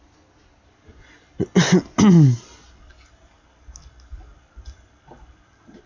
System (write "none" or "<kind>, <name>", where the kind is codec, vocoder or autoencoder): none